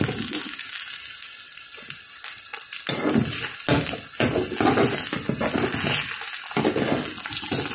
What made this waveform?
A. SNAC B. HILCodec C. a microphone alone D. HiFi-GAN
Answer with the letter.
C